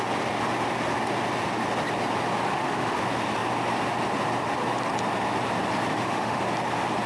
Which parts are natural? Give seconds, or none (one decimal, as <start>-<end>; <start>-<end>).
0.0-2.5; 3.0-5.9; 6.4-7.1